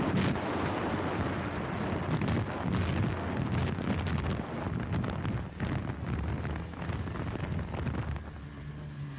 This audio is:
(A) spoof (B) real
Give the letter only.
B